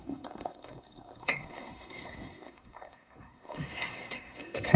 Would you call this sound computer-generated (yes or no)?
yes